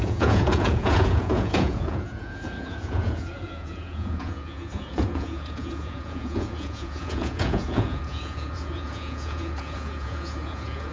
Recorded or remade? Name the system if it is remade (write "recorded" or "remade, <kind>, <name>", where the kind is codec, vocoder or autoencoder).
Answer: remade, vocoder, Vocos